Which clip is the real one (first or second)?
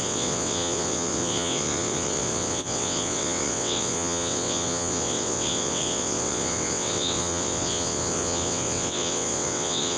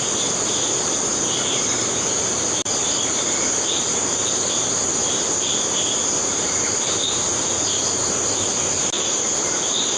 second